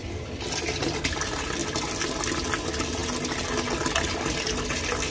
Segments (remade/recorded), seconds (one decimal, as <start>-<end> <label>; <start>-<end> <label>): 0.0-5.1 recorded